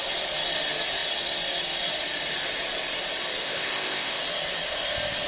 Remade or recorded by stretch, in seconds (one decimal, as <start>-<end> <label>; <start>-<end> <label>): 0.0-3.4 recorded; 3.4-4.2 remade; 4.2-5.3 recorded